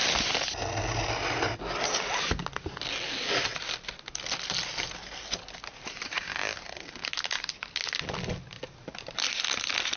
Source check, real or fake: real